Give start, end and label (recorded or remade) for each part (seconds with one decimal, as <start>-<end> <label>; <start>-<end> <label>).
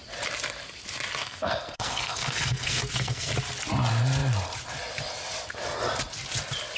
0.0-1.2 recorded; 1.2-3.3 remade; 3.3-6.8 recorded